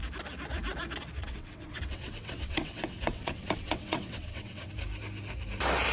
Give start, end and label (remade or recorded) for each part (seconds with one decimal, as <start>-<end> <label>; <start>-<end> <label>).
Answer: 0.0-1.2 recorded; 1.2-4.7 remade; 4.7-5.9 recorded